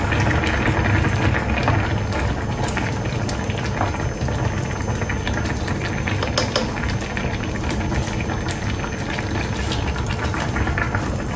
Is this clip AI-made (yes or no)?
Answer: no